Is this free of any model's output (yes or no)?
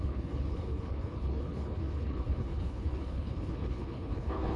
no